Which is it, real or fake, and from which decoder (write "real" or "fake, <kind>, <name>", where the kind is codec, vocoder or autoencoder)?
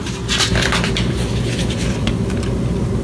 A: real